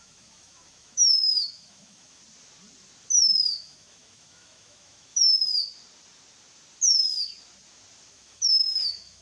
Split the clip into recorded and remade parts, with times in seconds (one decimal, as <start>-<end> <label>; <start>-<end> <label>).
0.0-2.2 remade; 2.2-3.2 recorded; 3.2-5.1 remade; 5.1-8.1 recorded; 8.1-9.2 remade